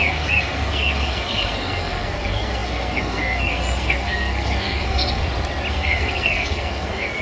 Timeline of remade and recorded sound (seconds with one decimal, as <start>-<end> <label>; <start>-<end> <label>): 0.0-5.2 remade; 5.2-5.7 recorded; 5.7-7.2 remade